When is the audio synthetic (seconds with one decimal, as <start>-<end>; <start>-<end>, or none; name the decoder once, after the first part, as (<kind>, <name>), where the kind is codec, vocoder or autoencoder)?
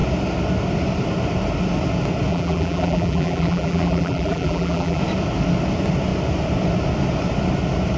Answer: 2.3-5.0 (vocoder, BigVGAN v2)